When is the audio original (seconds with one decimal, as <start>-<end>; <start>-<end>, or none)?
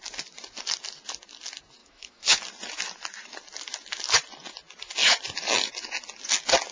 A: 0.0-1.8; 2.4-6.7